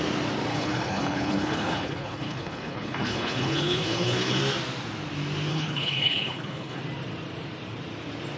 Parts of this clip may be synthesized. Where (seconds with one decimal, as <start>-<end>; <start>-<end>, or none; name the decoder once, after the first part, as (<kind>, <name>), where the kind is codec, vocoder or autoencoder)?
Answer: 0.5-4.4 (codec, HILCodec); 5.5-6.8